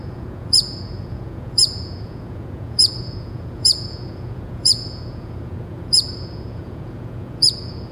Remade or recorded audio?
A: remade